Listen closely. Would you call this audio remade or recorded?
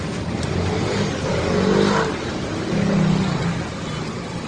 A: recorded